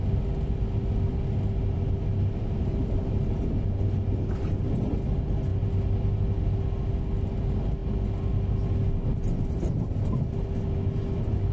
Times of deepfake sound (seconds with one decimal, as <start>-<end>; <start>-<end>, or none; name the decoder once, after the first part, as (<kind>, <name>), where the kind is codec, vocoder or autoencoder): none